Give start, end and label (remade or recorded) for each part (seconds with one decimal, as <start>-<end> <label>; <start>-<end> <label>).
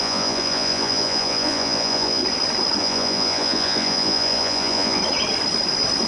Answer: 0.0-2.2 remade; 2.2-2.8 recorded; 2.8-5.0 remade; 5.0-6.1 recorded